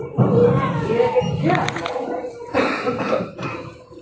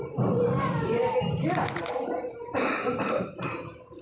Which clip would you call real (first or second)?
first